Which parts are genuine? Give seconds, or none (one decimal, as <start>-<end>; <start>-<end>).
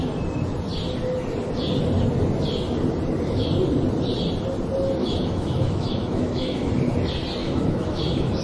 0.0-5.0; 6.7-7.4